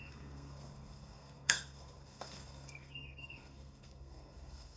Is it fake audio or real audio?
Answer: fake